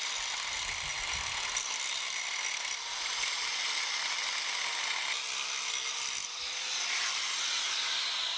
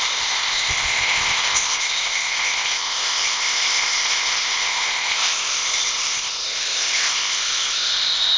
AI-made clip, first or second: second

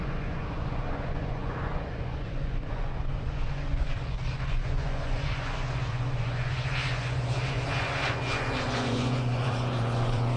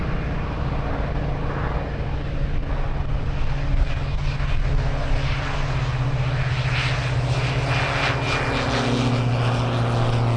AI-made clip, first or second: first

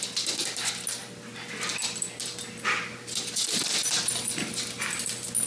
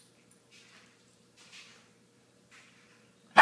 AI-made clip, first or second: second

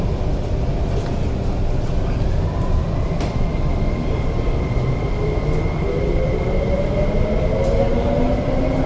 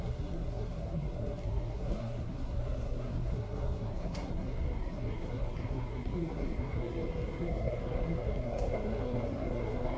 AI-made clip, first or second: second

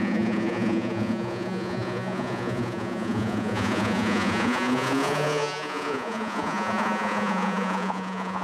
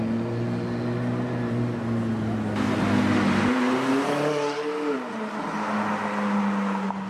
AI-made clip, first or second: first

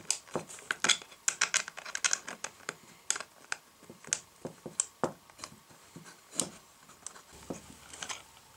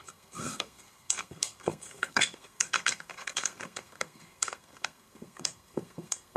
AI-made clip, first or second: second